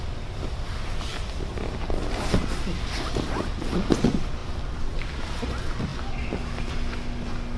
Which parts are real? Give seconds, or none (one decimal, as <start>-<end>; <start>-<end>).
0.0-7.6

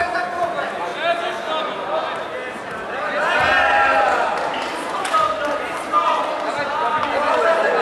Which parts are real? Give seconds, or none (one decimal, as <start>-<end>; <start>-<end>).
0.0-7.8

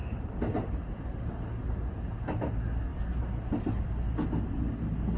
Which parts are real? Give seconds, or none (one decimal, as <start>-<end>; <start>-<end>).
0.0-5.2

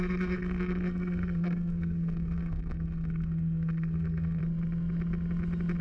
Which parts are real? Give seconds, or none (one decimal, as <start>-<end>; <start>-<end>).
4.4-5.8

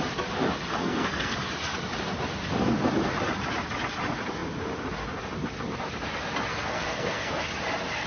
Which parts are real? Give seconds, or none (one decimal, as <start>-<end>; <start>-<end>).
0.0-0.7; 1.3-6.5; 7.4-8.1

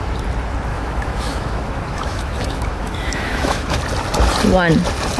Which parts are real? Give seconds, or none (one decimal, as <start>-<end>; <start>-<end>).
0.0-0.7; 3.8-5.2

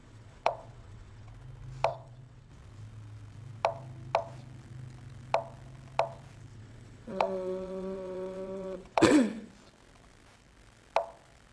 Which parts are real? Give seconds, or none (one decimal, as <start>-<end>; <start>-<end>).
1.3-1.9; 2.5-6.5; 9.5-11.5